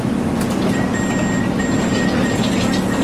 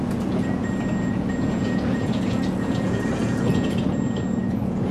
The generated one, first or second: second